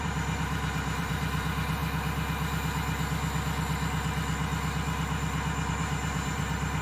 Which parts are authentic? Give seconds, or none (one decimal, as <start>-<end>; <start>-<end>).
1.8-5.7